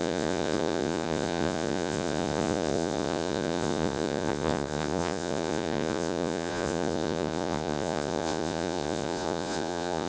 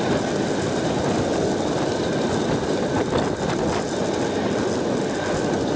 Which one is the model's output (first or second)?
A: first